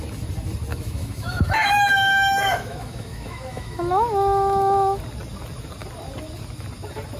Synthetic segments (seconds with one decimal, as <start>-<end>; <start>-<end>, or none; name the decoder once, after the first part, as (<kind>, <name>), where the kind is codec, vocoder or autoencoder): 0.7-5.0 (autoencoder, DAC-VAE)